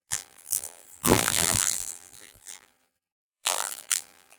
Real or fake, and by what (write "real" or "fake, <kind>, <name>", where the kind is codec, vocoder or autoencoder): fake, vocoder, BigVGAN v2